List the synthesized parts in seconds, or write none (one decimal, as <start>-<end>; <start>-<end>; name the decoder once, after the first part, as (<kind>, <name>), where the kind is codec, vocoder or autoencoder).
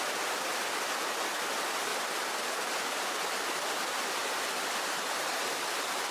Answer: 4.2-5.3 (vocoder, BigVGAN v2)